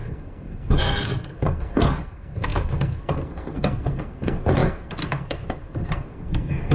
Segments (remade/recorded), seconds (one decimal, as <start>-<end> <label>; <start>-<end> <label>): 0.0-6.7 remade

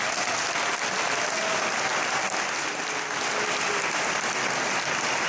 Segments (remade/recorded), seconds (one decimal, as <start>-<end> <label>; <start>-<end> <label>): 0.0-5.3 recorded

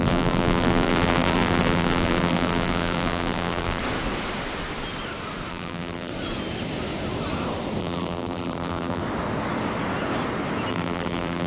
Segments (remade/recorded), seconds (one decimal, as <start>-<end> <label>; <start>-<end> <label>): 0.0-3.8 remade; 3.8-5.5 recorded; 5.5-6.1 remade; 6.1-7.8 recorded; 7.8-9.0 remade; 9.0-10.7 recorded; 10.7-11.5 remade

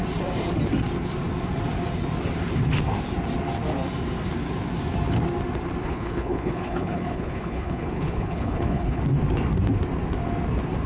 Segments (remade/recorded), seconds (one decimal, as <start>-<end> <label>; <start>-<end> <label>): 0.0-5.8 recorded; 5.8-9.0 remade; 9.0-10.9 recorded

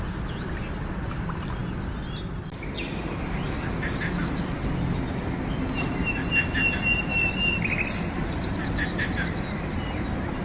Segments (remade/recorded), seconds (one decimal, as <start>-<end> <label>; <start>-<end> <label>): 0.0-10.4 recorded

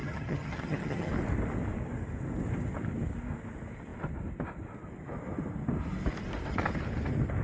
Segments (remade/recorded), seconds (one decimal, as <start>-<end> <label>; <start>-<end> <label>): 0.0-1.1 remade; 1.1-7.4 recorded

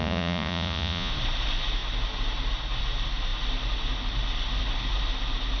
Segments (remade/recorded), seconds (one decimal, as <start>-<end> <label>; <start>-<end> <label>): 0.0-1.1 remade; 1.1-5.6 recorded

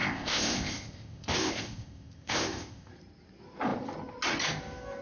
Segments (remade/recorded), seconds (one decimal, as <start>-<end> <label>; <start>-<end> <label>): 0.0-2.9 remade; 2.9-5.0 recorded